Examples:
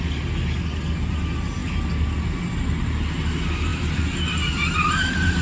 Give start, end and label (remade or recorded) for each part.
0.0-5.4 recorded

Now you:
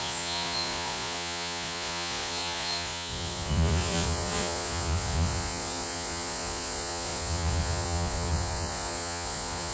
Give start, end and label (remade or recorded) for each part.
0.0-9.7 remade

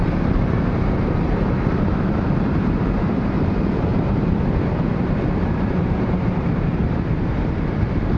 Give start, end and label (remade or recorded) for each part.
0.0-8.2 remade

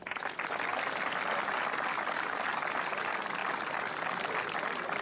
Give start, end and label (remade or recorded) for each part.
0.0-5.0 recorded

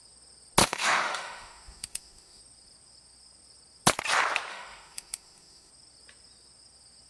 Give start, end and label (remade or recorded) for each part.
0.0-0.6 recorded; 0.6-2.4 remade; 2.4-4.5 recorded; 4.5-5.7 remade; 5.7-7.1 recorded

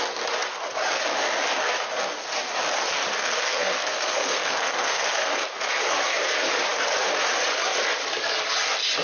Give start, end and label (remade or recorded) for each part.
0.0-3.2 recorded; 3.2-5.7 remade; 5.7-9.0 recorded

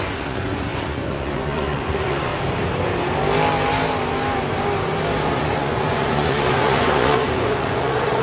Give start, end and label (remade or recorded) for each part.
0.0-2.3 remade; 2.3-5.3 recorded; 5.3-8.2 remade